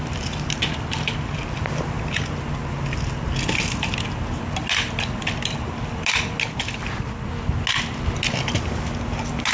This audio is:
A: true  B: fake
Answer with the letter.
A